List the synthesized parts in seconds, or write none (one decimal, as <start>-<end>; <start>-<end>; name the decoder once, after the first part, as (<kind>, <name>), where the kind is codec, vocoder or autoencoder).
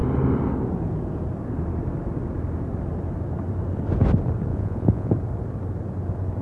4.5-5.1 (vocoder, Vocos)